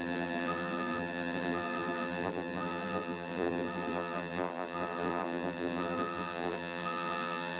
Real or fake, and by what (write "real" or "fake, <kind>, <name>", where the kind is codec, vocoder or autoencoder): fake, vocoder, BigVGAN v2